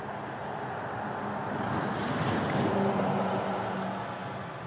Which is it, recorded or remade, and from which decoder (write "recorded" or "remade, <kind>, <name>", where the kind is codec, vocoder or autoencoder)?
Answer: recorded